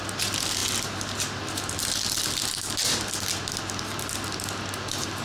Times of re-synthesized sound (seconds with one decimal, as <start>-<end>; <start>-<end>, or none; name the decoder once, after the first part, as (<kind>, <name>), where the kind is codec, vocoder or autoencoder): none